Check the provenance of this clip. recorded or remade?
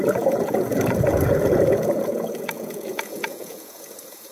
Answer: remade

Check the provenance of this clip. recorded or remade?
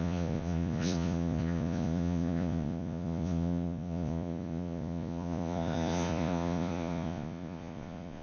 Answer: remade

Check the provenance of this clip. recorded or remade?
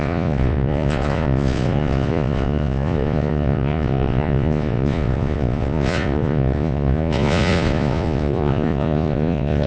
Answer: remade